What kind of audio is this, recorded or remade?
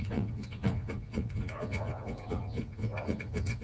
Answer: remade